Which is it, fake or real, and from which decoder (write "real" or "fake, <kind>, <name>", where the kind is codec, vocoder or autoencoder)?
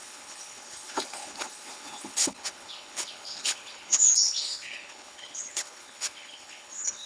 fake, codec, HILCodec